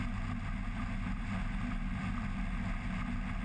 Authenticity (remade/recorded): recorded